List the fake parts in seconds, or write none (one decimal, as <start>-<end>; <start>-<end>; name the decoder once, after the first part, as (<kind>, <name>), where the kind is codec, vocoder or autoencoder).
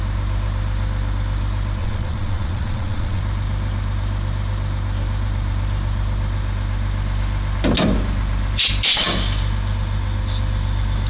1.8-3.2 (vocoder, Vocos)